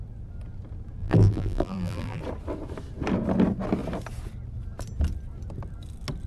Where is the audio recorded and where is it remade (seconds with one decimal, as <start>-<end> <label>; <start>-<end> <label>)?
0.0-1.0 recorded; 1.0-2.2 remade; 2.2-6.3 recorded